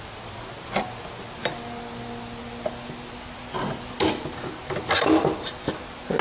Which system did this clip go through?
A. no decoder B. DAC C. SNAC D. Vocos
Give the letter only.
A